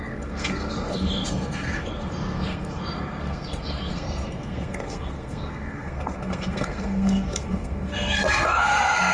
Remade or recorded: remade